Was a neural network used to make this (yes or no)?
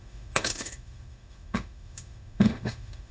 yes